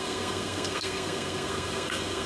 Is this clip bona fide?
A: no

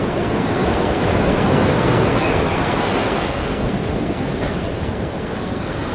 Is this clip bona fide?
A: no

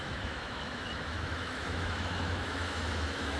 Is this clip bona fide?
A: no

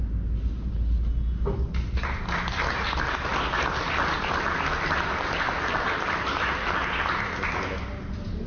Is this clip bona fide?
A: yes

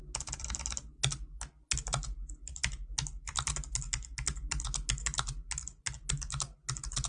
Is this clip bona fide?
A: yes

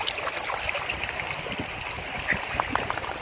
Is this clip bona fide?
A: no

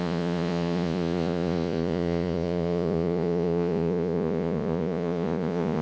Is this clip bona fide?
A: no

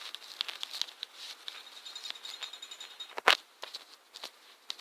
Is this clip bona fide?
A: yes